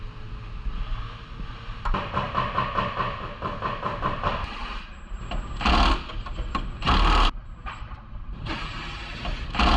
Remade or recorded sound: recorded